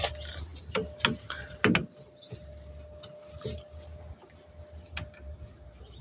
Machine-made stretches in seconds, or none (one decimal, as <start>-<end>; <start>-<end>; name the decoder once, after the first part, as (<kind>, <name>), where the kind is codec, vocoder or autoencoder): none